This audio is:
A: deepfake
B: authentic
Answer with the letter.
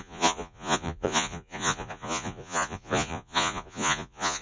A